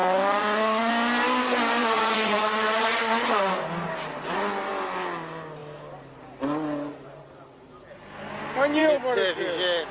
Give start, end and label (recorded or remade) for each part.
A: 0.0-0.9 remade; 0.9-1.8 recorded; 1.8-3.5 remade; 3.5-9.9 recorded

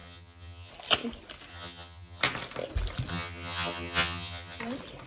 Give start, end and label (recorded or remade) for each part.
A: 0.0-0.7 remade; 0.7-1.5 recorded; 1.5-2.2 remade; 2.2-3.1 recorded; 3.1-4.6 remade; 4.6-5.1 recorded

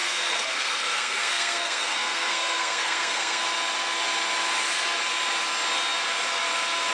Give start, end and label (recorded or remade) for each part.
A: 0.0-3.4 remade; 3.4-6.9 recorded

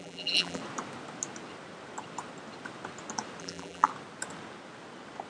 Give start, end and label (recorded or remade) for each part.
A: 0.0-0.6 remade; 0.6-3.4 recorded; 3.4-3.9 remade; 3.9-5.3 recorded

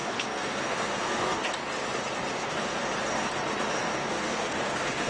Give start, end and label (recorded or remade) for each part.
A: 0.0-1.4 remade; 1.4-2.3 recorded; 2.3-2.9 remade; 2.9-3.8 recorded; 3.8-5.1 remade

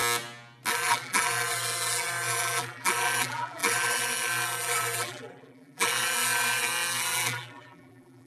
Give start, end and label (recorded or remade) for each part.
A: 0.0-0.7 recorded; 0.7-8.3 remade

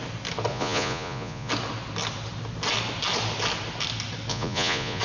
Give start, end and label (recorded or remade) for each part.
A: 0.0-0.5 recorded; 0.5-1.5 remade; 1.5-4.3 recorded; 4.3-5.0 remade